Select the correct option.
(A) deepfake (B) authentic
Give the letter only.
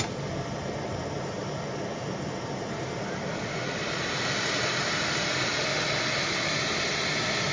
B